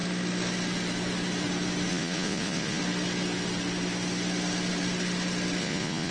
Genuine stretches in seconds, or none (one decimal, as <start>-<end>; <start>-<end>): 0.0-1.9; 2.8-5.6